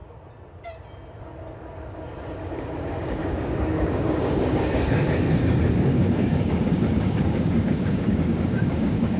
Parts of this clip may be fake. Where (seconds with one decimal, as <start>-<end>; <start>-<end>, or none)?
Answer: 2.4-9.2